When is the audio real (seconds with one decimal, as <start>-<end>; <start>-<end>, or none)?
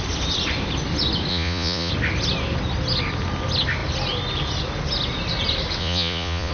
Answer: 0.0-1.3; 1.9-5.8